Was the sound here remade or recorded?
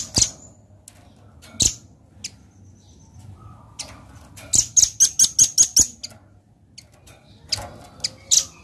recorded